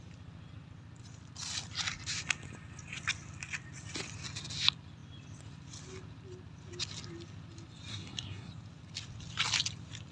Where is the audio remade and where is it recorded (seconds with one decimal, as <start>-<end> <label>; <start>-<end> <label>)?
0.0-7.9 recorded; 7.9-8.5 remade; 8.5-10.1 recorded